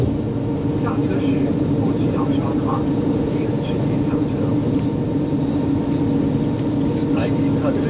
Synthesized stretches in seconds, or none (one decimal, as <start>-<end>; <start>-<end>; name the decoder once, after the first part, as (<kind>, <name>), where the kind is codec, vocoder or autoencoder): 1.0-5.7 (vocoder, BigVGAN v2)